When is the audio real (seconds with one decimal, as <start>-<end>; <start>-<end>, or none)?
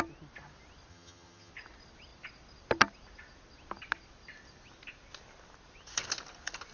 0.0-0.9; 1.5-6.7